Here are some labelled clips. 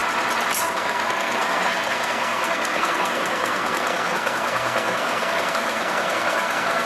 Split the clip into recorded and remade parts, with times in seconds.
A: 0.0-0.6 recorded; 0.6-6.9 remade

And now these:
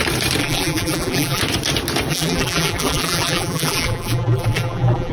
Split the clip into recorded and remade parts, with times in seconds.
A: 0.0-0.4 recorded; 0.4-1.4 remade; 1.4-2.1 recorded; 2.1-5.1 remade

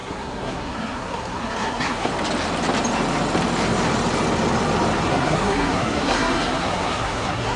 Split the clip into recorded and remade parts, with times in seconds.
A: 0.0-2.1 remade; 2.1-5.1 recorded; 5.1-7.6 remade

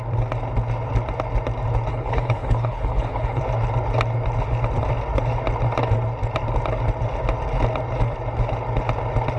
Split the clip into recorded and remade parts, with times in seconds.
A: 0.0-1.9 recorded; 1.9-3.4 remade; 3.4-9.4 recorded